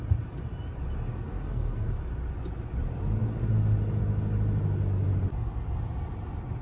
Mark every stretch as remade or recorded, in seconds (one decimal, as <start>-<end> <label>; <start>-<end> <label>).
0.0-1.1 recorded; 1.1-1.9 remade; 1.9-6.6 recorded

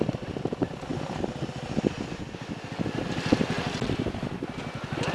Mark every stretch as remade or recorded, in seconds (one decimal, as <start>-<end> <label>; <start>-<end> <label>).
0.0-5.1 recorded